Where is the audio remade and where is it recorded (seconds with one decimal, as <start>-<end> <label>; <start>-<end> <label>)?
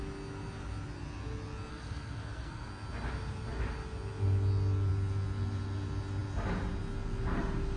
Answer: 0.0-1.7 recorded; 1.7-2.7 remade; 2.7-7.8 recorded